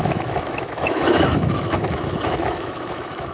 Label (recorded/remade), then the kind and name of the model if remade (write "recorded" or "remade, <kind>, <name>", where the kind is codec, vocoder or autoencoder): remade, autoencoder, DAC-VAE